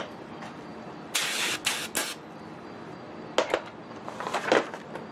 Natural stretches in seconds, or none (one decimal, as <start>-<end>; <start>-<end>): 0.0-5.1

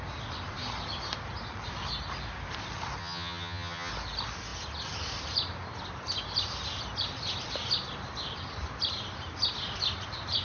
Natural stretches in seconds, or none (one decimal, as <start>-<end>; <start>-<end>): 0.0-3.0; 3.9-10.4

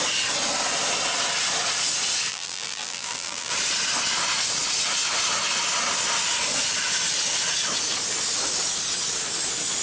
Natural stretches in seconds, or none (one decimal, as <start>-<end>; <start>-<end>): 0.0-2.3; 3.5-9.8

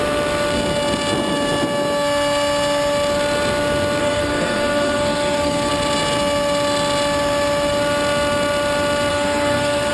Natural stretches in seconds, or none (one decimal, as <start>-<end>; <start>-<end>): 0.0-4.0; 5.7-9.1

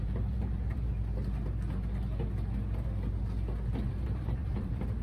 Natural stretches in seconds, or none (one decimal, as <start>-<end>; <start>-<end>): 0.9-3.9

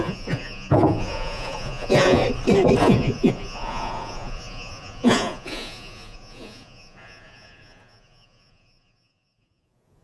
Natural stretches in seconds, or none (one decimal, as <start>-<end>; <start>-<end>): 2.2-2.8

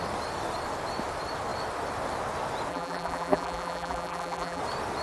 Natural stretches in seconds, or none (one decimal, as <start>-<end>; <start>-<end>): 0.0-2.7; 4.6-5.0